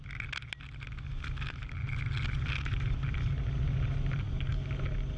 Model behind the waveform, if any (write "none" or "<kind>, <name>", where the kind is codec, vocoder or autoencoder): none